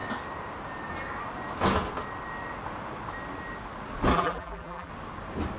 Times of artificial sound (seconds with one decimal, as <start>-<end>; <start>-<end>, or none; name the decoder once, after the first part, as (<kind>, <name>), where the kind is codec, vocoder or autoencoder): 4.1-4.9 (vocoder, BigVGAN v2)